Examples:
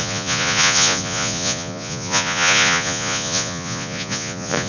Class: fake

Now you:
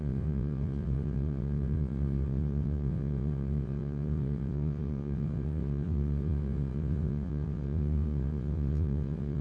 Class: fake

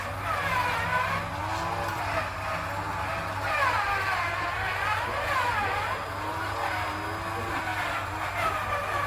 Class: real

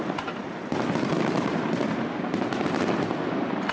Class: real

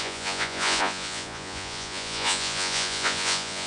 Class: fake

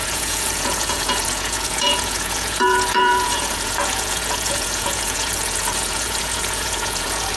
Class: fake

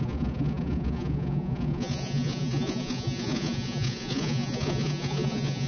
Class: fake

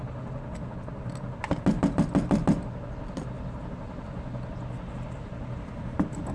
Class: real